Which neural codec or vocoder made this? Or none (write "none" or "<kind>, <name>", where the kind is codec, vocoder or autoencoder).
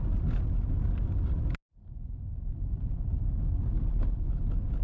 none